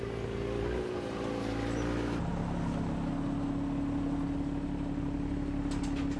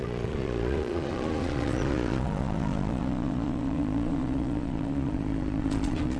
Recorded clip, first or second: first